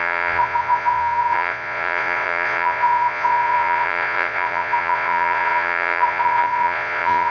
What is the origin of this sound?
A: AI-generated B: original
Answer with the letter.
A